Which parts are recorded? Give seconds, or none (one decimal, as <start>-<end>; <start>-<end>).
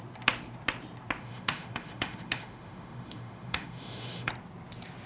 0.0-1.2; 4.3-5.1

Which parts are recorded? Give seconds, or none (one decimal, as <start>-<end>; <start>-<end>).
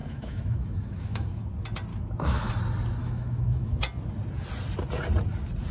1.5-1.9; 2.5-3.0; 3.8-5.7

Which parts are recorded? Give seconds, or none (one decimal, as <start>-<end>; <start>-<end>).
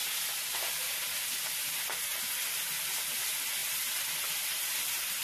0.0-2.1; 2.6-3.6; 4.8-5.2